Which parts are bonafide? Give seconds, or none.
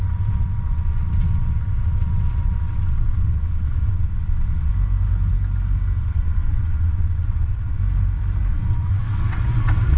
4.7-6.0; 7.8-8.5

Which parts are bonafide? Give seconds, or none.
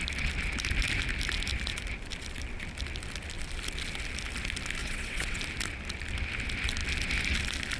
0.0-4.8; 5.4-7.8